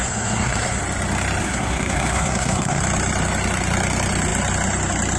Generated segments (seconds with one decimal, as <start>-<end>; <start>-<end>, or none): 0.0-0.8; 1.4-2.8